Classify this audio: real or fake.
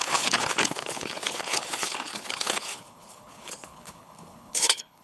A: fake